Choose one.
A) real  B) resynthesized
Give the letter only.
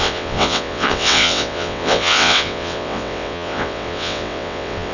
B